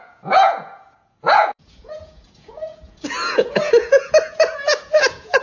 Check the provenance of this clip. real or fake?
fake